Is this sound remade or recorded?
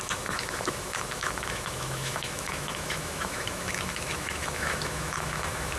remade